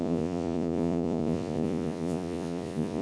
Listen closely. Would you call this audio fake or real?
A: fake